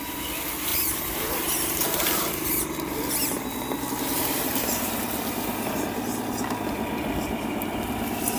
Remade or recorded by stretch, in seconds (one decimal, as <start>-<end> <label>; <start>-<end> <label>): 0.0-0.7 recorded; 0.7-2.6 remade; 2.6-4.1 recorded; 4.1-5.0 remade; 5.0-8.4 recorded